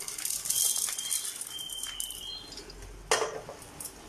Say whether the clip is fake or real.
real